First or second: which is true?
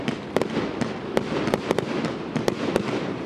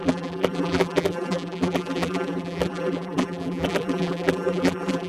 first